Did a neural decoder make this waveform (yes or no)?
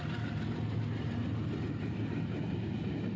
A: no